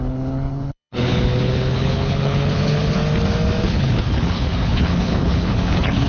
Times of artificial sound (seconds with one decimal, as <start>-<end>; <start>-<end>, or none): 0.0-3.0; 3.6-6.1